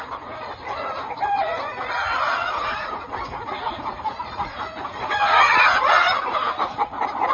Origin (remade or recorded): remade